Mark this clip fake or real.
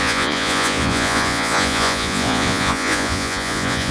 fake